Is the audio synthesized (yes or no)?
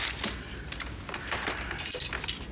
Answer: no